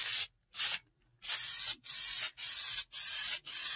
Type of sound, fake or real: real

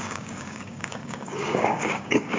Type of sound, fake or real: fake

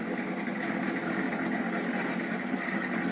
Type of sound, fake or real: real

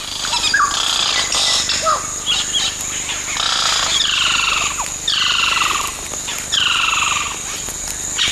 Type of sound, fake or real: real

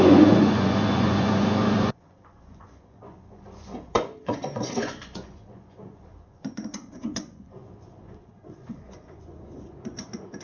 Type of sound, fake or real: fake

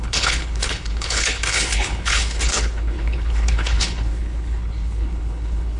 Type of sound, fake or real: fake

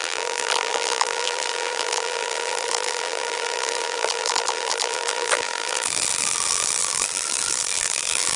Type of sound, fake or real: fake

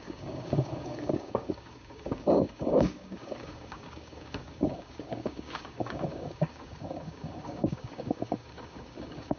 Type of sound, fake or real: fake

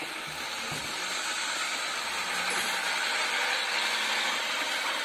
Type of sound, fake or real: real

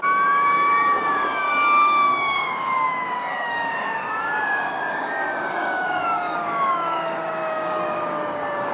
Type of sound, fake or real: fake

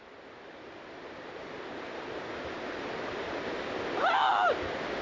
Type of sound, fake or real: real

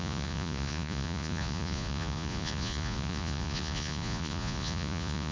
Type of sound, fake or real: fake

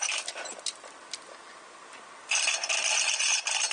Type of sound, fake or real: real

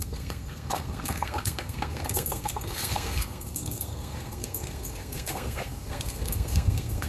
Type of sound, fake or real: fake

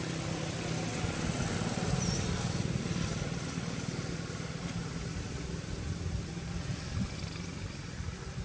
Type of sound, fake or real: fake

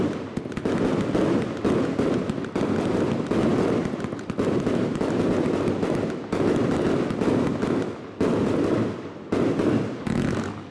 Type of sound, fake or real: real